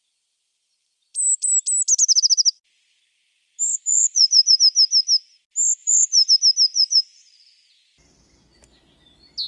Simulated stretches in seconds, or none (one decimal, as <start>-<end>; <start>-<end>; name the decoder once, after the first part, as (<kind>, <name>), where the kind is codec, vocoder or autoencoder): 3.9-4.6 (vocoder, BigVGAN v2); 5.8-6.3; 6.7-7.7